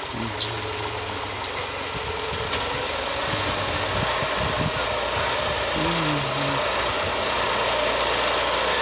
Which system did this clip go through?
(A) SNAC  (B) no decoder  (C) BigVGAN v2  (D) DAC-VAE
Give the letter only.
B